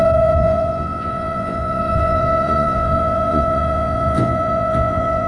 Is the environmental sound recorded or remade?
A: remade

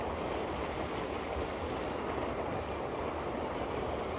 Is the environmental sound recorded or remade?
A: recorded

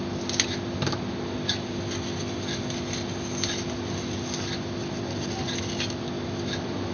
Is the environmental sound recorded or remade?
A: recorded